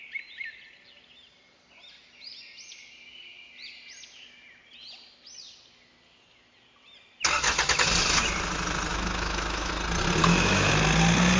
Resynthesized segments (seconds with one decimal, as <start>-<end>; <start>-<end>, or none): 8.9-9.7; 10.2-10.7